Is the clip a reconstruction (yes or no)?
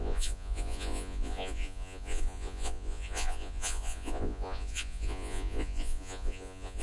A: yes